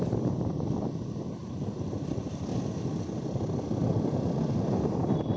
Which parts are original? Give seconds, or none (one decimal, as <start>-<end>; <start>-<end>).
1.4-2.1; 2.5-3.2; 3.8-4.8